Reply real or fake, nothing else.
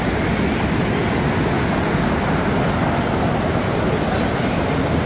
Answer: real